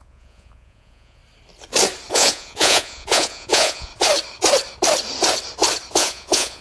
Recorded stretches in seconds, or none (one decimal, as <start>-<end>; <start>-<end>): 1.2-2.1; 3.9-5.9